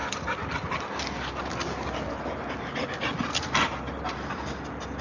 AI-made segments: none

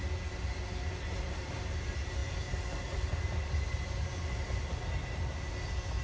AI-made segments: none

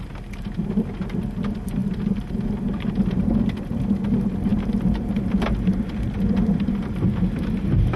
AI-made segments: none